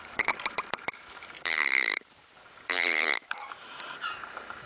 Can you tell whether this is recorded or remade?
remade